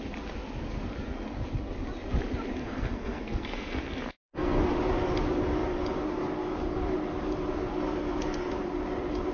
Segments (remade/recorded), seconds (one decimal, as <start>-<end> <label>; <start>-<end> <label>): 0.0-2.6 recorded; 2.6-4.6 remade; 4.6-9.3 recorded